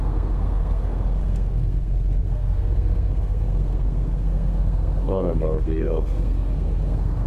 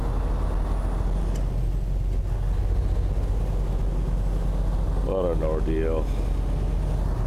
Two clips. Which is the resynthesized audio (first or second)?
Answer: first